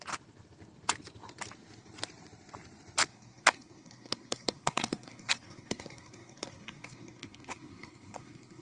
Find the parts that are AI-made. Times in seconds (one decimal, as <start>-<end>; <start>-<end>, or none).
3.1-8.6